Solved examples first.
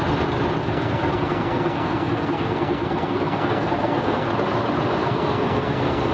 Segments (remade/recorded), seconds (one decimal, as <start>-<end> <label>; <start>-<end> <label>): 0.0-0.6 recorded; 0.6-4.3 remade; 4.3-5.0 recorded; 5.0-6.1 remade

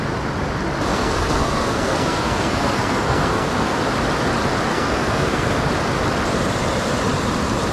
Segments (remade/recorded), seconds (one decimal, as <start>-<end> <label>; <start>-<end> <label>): 0.0-0.9 recorded; 0.9-3.8 remade; 3.8-4.7 recorded; 4.7-5.7 remade; 5.7-7.7 recorded

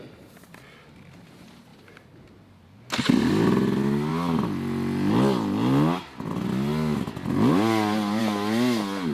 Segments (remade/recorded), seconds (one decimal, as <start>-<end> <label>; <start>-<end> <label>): 0.0-9.1 recorded